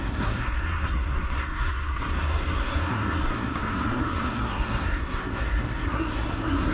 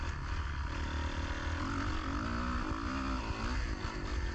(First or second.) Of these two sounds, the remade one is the first